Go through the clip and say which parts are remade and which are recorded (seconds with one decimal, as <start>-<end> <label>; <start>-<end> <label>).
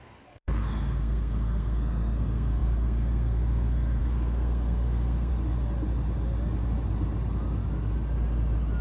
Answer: 0.0-5.3 remade; 5.3-8.8 recorded